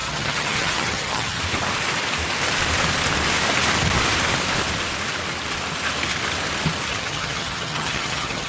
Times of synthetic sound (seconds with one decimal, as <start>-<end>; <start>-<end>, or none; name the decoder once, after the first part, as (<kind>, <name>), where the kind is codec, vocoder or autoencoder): 0.0-1.4 (vocoder, HiFi-GAN); 6.9-8.5